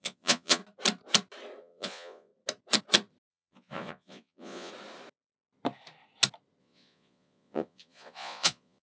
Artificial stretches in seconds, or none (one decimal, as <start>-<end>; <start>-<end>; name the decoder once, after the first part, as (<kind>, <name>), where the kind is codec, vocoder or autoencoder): 0.0-0.6 (vocoder, Vocos); 1.6-2.3; 3.3-4.7; 6.6-8.8

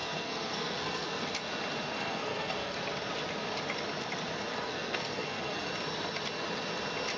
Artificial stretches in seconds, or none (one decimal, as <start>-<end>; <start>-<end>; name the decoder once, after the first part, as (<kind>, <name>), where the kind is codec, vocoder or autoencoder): 0.0-1.3 (codec, SNAC); 1.9-2.8; 4.5-5.7